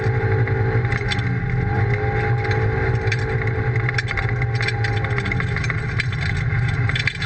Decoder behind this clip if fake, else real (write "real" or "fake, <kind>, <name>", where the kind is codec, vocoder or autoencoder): real